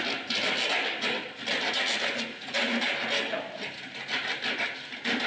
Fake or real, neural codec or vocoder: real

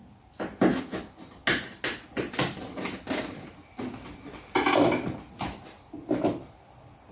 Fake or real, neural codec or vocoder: real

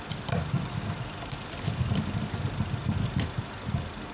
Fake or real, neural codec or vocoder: real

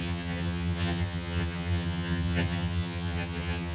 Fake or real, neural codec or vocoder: fake, vocoder, HiFi-GAN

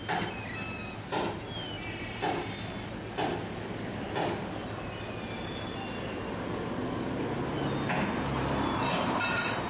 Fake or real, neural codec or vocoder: real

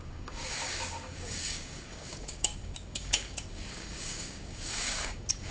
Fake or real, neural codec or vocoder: fake, codec, DAC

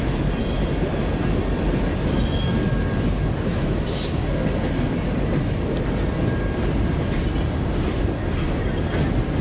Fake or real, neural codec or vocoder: real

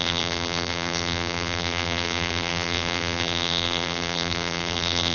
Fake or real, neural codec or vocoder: fake, vocoder, BigVGAN v2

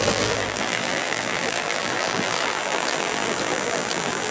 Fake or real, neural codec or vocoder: fake, vocoder, BigVGAN v2